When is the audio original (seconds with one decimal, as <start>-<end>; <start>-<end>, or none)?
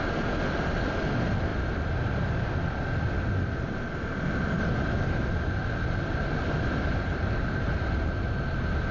0.0-8.9